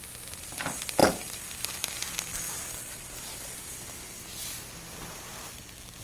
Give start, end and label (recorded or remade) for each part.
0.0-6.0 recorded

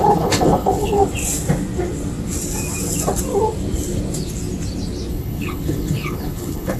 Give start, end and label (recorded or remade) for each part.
0.0-1.0 remade; 1.0-5.1 recorded; 5.1-6.8 remade

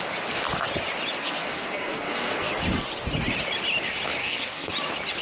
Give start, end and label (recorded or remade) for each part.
0.0-1.2 recorded; 1.2-2.5 remade; 2.5-4.2 recorded; 4.2-4.7 remade; 4.7-5.2 recorded

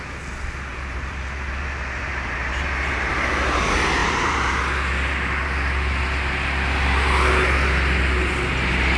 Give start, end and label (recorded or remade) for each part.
0.0-0.7 recorded; 0.7-3.1 remade; 3.1-4.0 recorded; 4.0-4.6 remade; 4.6-9.0 recorded

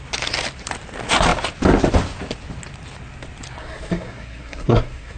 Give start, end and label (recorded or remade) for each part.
0.0-3.6 recorded; 3.6-5.2 remade

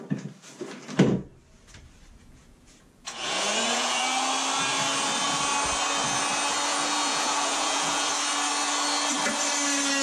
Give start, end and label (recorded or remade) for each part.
0.0-2.2 recorded; 2.2-4.0 remade; 4.0-6.7 recorded; 6.7-8.1 remade; 8.1-10.0 recorded